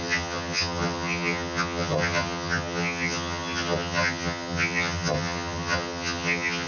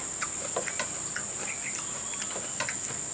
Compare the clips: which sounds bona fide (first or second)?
second